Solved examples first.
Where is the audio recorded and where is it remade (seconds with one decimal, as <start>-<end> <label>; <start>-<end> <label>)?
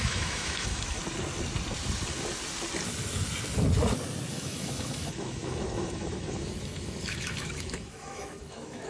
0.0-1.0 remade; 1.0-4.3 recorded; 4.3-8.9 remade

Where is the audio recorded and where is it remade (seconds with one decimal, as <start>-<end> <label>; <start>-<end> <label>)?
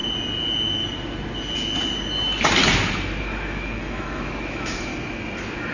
0.0-3.2 recorded; 3.2-4.9 remade; 4.9-5.7 recorded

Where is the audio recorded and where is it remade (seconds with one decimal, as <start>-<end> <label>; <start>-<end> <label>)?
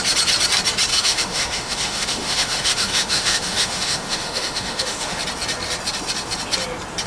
0.0-0.9 recorded; 0.9-5.2 remade; 5.2-7.1 recorded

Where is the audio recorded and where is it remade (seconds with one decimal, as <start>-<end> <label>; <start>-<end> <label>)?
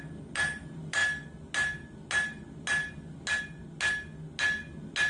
0.0-5.1 recorded